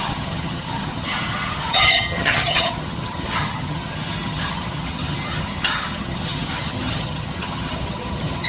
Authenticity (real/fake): fake